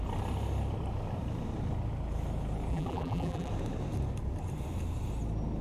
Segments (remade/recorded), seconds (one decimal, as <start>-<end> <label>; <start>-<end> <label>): 0.0-2.7 recorded; 2.7-3.5 remade; 3.5-5.6 recorded